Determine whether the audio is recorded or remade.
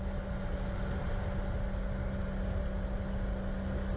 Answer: recorded